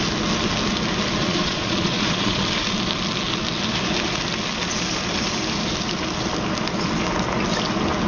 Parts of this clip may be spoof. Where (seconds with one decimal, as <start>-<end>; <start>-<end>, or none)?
1.2-2.4